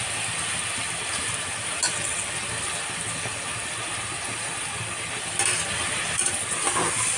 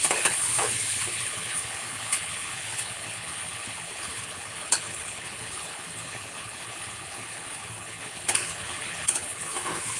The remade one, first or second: second